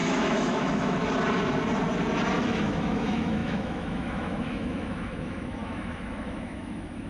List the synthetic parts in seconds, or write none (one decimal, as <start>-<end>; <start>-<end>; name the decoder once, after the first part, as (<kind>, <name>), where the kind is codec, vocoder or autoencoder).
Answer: 0.0-1.0 (autoencoder, DAC-VAE); 2.4-7.1